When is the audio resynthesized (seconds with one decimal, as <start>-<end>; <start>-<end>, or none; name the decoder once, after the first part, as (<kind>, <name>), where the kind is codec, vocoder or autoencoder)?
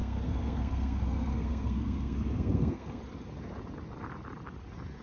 0.0-3.0 (codec, SNAC)